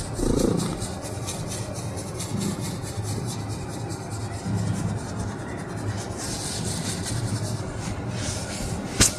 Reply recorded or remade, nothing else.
recorded